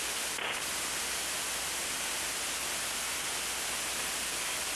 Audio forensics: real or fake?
real